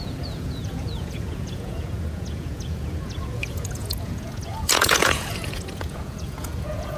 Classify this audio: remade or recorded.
remade